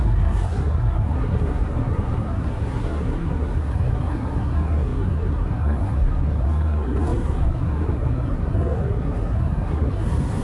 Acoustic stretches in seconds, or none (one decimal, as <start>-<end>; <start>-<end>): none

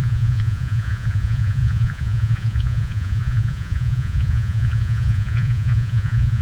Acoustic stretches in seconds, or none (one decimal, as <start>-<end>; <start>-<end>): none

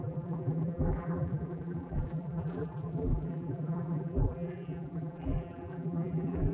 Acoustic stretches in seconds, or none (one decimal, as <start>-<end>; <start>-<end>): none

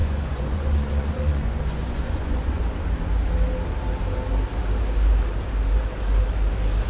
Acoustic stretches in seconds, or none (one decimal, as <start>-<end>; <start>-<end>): 2.6-6.9

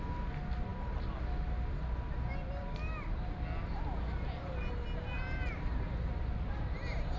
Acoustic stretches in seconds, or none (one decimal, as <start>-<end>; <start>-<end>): 0.0-7.2

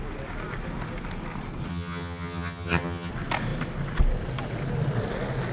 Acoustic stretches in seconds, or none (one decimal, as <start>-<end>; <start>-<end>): 0.0-1.7; 3.1-5.5

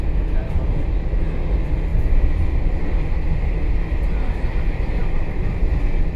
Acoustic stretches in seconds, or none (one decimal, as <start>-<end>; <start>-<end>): 0.0-6.2

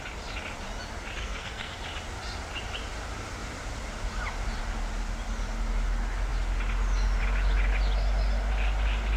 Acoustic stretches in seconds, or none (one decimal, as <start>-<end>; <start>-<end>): 0.0-1.2; 1.8-9.2